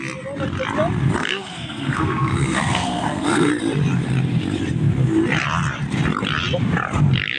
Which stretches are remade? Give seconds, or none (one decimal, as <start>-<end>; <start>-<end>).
1.2-3.5